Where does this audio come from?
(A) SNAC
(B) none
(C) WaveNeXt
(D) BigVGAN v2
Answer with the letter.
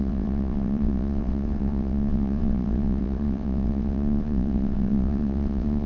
C